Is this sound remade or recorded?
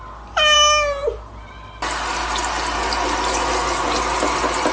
recorded